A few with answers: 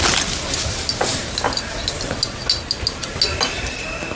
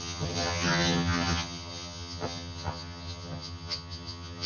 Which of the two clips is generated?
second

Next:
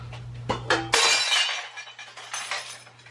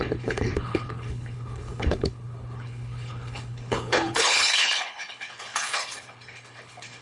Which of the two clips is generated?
second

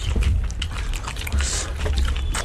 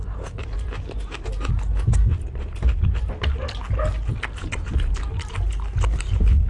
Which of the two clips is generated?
first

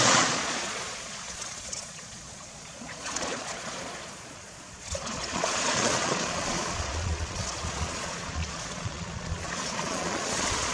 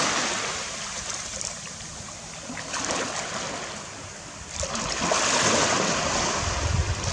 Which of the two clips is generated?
first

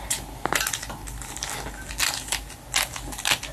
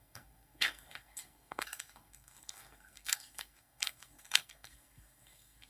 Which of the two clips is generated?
second